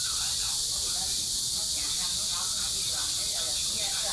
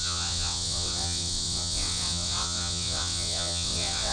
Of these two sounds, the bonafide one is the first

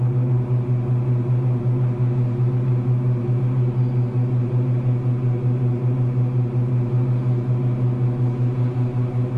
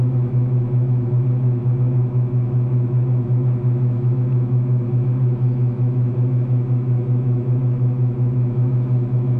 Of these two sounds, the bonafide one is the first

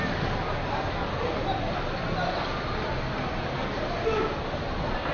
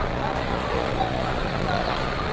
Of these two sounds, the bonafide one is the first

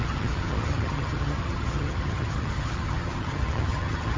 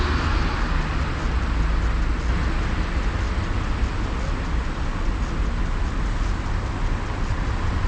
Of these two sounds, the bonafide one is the second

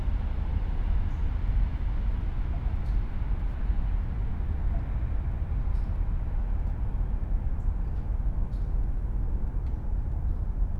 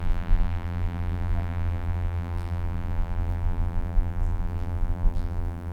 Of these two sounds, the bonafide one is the first